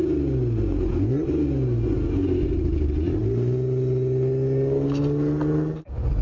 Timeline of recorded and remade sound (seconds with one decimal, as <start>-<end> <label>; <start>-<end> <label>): 0.0-6.2 recorded